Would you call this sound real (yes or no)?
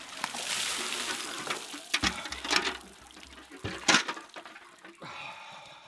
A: yes